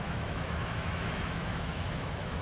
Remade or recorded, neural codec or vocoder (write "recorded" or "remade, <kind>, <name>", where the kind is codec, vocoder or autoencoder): remade, autoencoder, DAC-VAE